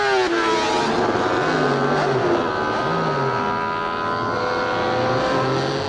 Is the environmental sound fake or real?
real